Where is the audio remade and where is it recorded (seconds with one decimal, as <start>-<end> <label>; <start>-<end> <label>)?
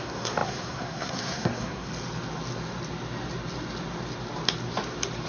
0.0-1.9 remade; 1.9-5.3 recorded